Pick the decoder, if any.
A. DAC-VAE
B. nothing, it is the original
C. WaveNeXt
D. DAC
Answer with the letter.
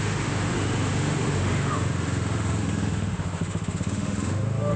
A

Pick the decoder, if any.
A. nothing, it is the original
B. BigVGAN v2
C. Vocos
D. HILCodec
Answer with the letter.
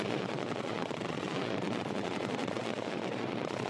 C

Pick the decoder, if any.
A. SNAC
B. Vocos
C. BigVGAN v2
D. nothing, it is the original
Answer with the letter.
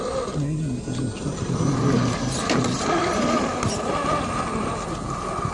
D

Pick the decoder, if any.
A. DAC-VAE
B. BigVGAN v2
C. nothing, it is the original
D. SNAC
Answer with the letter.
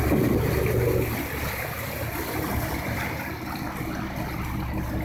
C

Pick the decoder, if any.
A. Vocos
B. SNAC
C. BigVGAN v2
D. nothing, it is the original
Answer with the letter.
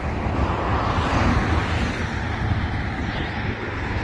D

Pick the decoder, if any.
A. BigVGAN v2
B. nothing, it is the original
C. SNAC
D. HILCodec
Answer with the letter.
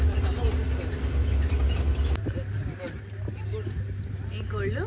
B